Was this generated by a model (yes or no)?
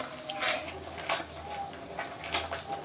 no